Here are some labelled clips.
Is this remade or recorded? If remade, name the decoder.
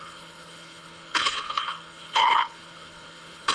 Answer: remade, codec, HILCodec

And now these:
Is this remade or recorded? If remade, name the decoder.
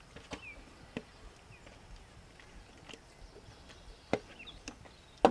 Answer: recorded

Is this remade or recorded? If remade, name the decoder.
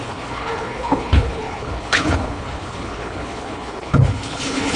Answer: remade, codec, HILCodec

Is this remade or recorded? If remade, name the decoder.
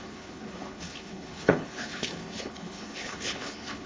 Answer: remade, codec, HILCodec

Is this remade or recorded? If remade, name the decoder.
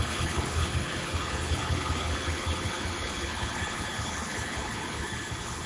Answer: remade, codec, HILCodec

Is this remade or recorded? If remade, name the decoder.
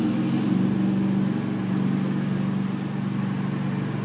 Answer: recorded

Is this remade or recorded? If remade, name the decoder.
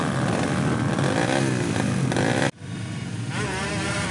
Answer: recorded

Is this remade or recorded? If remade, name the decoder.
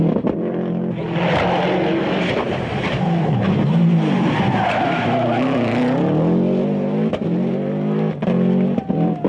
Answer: recorded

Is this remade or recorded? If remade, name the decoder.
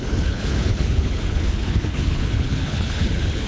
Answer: remade, codec, HILCodec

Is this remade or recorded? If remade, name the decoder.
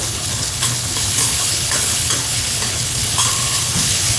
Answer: remade, codec, HILCodec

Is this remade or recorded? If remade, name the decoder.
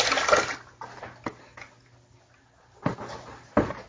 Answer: recorded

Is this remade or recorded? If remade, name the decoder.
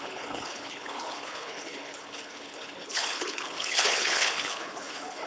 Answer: remade, codec, HILCodec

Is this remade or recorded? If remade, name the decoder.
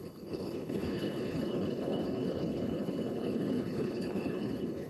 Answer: remade, codec, HILCodec